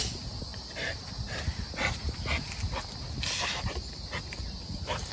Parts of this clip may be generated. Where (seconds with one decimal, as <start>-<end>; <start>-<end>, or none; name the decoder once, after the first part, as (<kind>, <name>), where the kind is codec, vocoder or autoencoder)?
none